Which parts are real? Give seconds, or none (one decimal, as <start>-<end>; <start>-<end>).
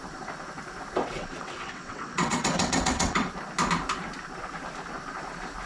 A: 0.0-1.0; 3.3-5.7